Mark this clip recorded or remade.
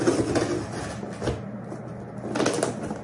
recorded